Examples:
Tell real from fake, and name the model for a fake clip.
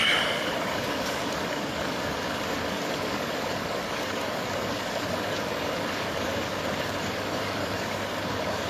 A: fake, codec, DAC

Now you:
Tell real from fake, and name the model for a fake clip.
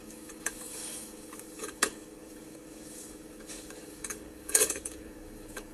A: fake, codec, DAC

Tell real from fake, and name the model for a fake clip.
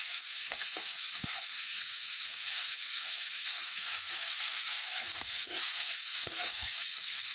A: fake, codec, SNAC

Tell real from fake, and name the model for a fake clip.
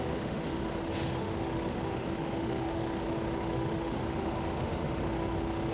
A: fake, autoencoder, DAC-VAE